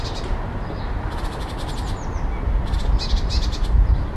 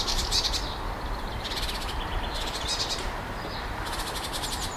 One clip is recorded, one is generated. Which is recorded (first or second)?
first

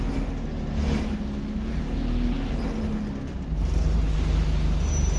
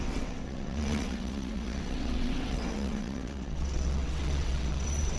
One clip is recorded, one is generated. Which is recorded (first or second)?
first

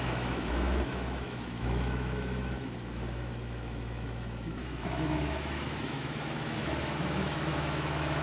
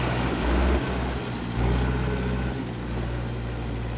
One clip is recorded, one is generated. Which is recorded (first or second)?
second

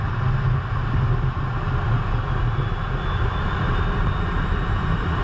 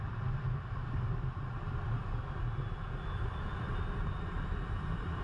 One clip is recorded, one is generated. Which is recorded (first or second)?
first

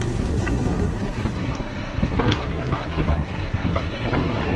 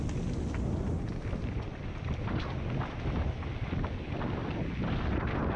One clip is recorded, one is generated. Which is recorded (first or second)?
second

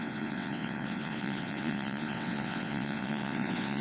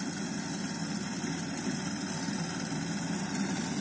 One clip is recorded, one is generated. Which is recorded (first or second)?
second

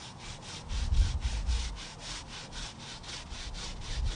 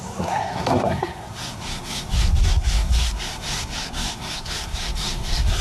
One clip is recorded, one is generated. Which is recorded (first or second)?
first